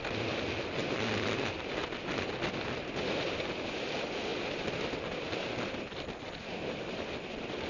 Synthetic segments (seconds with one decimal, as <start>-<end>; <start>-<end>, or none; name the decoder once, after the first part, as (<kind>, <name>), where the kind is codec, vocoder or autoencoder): none